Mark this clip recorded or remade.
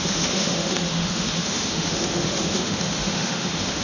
remade